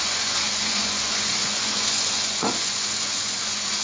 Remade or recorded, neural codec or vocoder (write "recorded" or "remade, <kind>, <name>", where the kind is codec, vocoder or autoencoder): remade, vocoder, Vocos